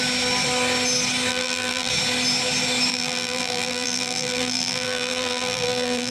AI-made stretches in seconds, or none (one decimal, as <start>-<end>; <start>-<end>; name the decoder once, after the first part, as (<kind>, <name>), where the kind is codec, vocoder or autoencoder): 1.3-1.9 (vocoder, BigVGAN v2); 2.9-6.1